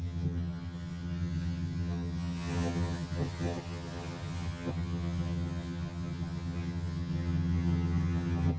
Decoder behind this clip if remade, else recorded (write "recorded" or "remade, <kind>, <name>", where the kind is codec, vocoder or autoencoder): remade, vocoder, HiFi-GAN